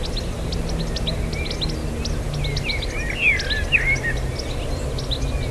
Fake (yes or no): no